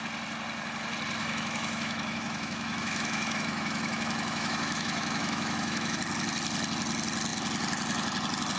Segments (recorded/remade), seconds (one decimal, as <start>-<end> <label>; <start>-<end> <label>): 0.0-1.2 recorded; 1.2-6.0 remade; 6.0-8.6 recorded